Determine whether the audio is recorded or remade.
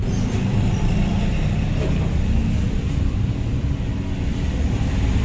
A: recorded